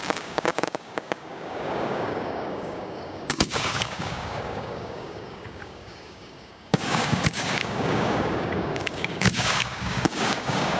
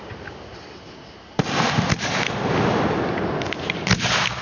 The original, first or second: second